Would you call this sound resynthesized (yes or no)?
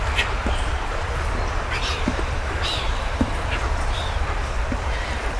yes